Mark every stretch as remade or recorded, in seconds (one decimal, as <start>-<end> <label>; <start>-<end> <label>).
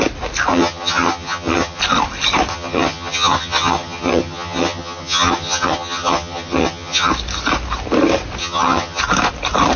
0.0-0.5 recorded; 0.5-1.8 remade; 1.8-2.5 recorded; 2.5-7.1 remade; 7.1-8.4 recorded; 8.4-9.0 remade; 9.0-9.8 recorded